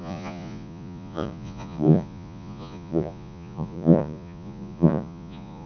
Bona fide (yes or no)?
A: no